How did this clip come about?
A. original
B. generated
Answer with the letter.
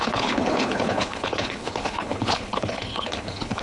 B